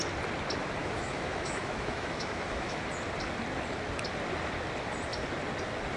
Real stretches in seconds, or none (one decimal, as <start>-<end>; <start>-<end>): 0.0-0.8; 2.8-6.0